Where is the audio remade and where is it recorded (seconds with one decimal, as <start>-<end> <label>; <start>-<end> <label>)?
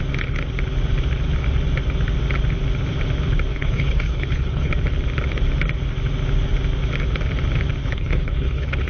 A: 0.0-3.5 recorded; 3.5-4.7 remade; 4.7-7.8 recorded; 7.8-8.9 remade